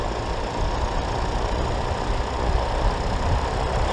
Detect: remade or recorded recorded